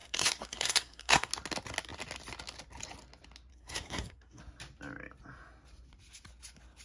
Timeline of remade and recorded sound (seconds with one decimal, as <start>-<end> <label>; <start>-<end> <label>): 0.0-1.3 remade; 1.3-3.5 recorded; 3.5-4.4 remade; 4.4-6.8 recorded